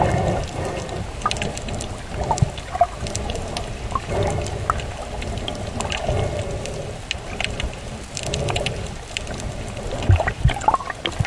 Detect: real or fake real